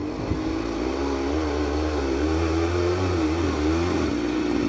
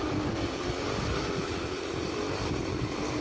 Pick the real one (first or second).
first